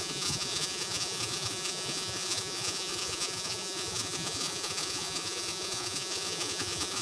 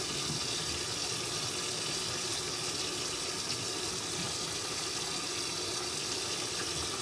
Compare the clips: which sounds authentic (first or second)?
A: second